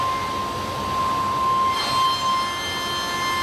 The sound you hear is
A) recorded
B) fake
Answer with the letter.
A